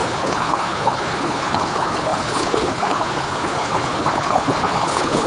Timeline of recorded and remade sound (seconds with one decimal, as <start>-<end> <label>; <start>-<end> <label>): 0.0-5.3 remade